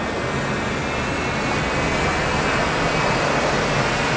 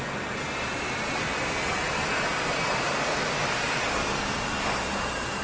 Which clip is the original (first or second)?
first